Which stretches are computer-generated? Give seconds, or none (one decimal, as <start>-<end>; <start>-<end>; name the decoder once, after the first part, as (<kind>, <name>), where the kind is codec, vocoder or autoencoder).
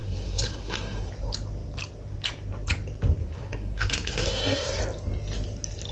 0.0-1.1 (codec, SNAC); 3.2-4.8